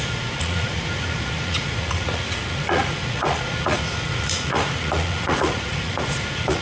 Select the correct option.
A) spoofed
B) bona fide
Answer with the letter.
A